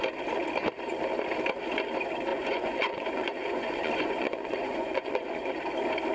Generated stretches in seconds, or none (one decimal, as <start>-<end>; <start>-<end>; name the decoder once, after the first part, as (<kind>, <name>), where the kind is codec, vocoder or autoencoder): 2.3-5.5 (vocoder, Vocos)

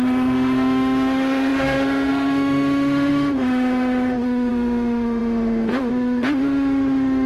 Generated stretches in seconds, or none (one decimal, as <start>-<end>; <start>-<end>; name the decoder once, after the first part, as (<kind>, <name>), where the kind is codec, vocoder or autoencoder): 0.0-7.3 (autoencoder, DAC-VAE)

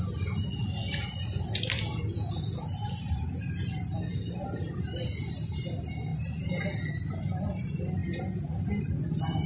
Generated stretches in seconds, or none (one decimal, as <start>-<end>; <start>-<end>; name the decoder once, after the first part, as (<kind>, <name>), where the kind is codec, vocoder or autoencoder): none